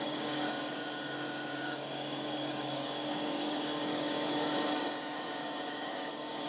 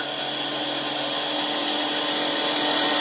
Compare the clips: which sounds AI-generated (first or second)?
first